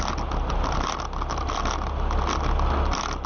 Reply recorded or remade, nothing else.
recorded